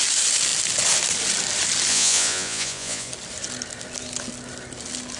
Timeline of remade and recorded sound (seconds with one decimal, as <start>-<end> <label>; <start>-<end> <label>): 0.0-1.9 recorded; 1.9-3.1 remade; 3.1-5.2 recorded